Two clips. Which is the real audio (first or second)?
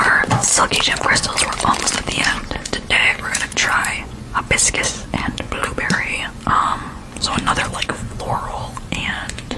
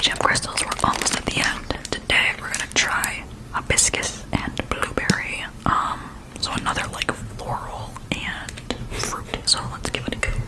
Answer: second